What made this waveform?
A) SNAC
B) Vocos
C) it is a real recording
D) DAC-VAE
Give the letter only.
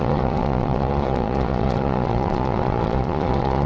B